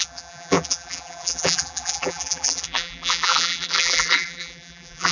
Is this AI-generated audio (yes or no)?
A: yes